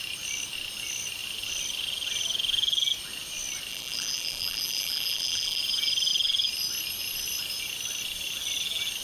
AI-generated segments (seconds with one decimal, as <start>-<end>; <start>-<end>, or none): 3.7-5.6

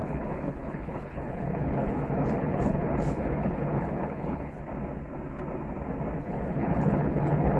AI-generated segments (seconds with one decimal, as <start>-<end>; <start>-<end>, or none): 0.0-4.6; 6.2-7.6

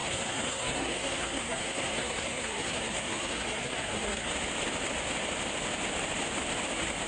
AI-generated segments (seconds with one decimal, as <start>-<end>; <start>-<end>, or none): 0.0-4.3

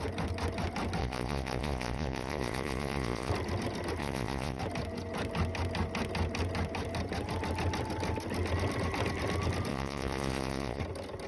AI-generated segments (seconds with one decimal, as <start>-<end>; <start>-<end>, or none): 1.0-3.3; 4.0-4.6; 9.7-10.8

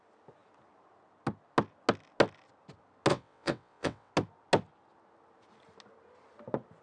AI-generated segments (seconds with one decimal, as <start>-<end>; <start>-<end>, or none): 3.1-4.1

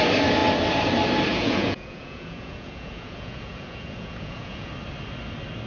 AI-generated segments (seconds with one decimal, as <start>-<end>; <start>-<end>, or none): 1.3-4.7

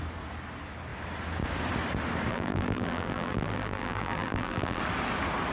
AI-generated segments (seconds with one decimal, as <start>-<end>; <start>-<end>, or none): 2.3-4.8